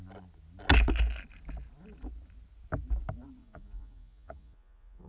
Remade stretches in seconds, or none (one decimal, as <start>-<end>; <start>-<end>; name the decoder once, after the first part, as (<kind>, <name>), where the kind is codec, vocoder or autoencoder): 3.4-5.1 (vocoder, Vocos)